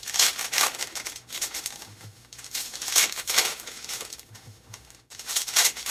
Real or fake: fake